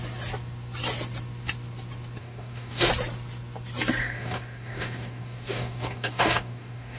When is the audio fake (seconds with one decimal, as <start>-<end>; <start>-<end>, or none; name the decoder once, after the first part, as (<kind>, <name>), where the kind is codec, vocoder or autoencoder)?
2.2-2.9 (codec, DAC); 4.0-7.0